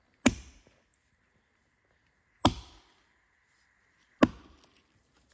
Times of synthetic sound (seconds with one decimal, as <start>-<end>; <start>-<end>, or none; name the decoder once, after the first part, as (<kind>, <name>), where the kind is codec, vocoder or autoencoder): none